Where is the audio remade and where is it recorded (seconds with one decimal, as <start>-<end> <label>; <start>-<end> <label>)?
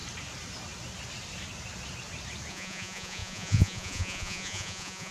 0.0-2.5 recorded; 2.5-5.1 remade